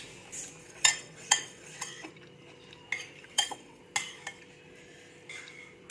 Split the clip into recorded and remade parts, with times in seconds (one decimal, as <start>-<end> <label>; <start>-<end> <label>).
0.0-0.6 recorded; 0.6-2.1 remade; 2.1-3.2 recorded; 3.2-3.8 remade; 3.8-5.9 recorded